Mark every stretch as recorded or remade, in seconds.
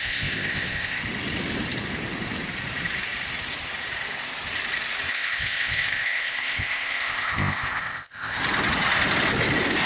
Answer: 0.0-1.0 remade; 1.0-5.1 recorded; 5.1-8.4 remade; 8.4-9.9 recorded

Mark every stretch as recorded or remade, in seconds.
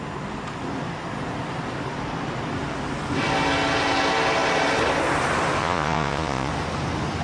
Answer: 0.0-5.6 recorded; 5.6-6.5 remade; 6.5-7.2 recorded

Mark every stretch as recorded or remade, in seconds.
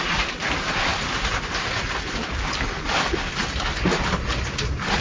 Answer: 0.0-5.0 recorded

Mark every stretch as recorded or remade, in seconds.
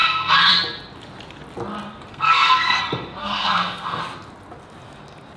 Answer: 0.0-0.5 remade; 0.5-2.1 recorded; 2.1-2.8 remade; 2.8-3.2 recorded; 3.2-4.0 remade; 4.0-5.4 recorded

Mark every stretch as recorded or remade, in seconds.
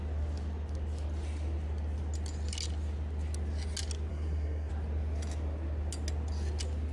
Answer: 0.0-4.1 recorded; 4.1-4.7 remade; 4.7-6.9 recorded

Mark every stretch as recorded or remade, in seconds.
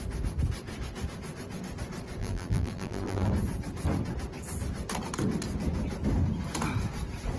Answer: 0.0-2.2 recorded; 2.2-3.3 remade; 3.3-7.4 recorded